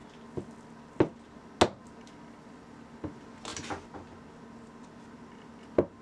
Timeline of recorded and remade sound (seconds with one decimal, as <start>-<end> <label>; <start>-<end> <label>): 0.0-6.0 recorded